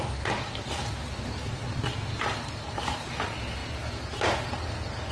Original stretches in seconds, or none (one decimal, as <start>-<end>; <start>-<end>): 0.0-5.1